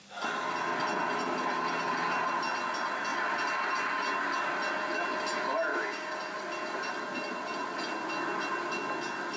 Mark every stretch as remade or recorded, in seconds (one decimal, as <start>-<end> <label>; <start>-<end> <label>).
0.0-5.7 recorded; 5.7-6.2 remade; 6.2-9.4 recorded